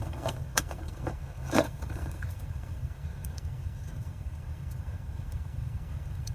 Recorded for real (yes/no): no